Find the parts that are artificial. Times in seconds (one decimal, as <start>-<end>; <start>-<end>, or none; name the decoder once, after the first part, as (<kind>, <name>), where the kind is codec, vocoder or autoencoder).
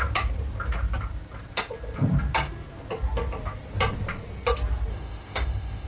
4.9-5.9 (autoencoder, DAC-VAE)